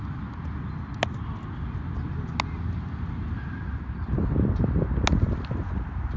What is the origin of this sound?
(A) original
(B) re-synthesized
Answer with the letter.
A